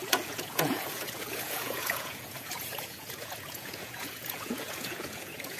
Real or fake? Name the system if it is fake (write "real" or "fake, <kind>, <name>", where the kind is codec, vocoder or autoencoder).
fake, vocoder, Vocos